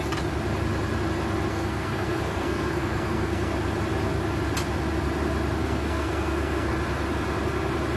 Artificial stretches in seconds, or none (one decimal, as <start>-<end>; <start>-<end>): 1.5-3.5; 5.6-6.7